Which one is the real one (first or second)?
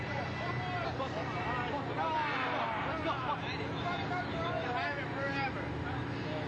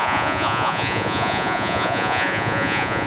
first